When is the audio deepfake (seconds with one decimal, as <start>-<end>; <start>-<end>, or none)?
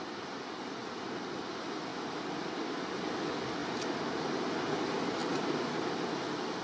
0.8-1.5; 1.9-2.8; 3.6-4.1; 5.2-6.0